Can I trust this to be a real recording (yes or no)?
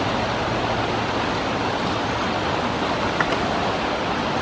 yes